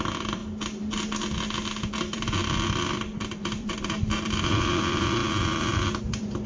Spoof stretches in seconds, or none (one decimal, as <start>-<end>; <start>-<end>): 0.0-0.4; 1.9-5.2; 6.0-6.5